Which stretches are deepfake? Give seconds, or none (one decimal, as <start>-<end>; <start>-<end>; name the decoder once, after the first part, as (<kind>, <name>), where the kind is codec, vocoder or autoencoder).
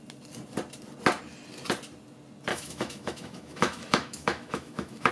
2.5-5.1 (autoencoder, DAC-VAE)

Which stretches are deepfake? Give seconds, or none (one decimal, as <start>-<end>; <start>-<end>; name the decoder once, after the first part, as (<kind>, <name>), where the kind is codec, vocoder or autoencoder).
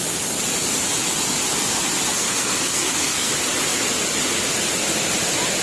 2.1-3.3 (codec, SNAC)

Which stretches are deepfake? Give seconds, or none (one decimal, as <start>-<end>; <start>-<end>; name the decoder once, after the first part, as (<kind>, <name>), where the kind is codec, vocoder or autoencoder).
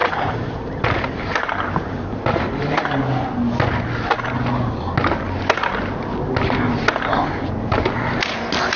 0.0-3.0 (vocoder, BigVGAN v2)